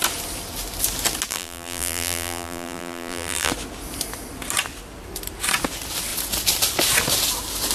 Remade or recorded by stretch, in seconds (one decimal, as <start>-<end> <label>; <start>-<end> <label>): 0.0-1.3 recorded; 1.3-3.5 remade; 3.5-7.7 recorded